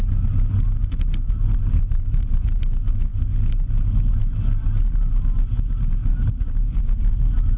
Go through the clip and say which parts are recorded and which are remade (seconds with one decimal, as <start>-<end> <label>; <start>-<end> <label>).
0.0-0.9 recorded; 0.9-2.6 remade; 2.6-6.1 recorded; 6.1-7.1 remade; 7.1-7.6 recorded